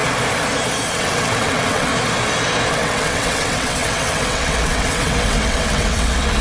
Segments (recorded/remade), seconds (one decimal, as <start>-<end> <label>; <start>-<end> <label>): 0.0-0.9 recorded; 0.9-1.9 remade; 1.9-2.7 recorded; 2.7-6.4 remade